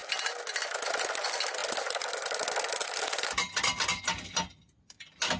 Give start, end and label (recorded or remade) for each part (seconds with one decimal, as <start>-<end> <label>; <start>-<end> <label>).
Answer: 0.0-5.4 recorded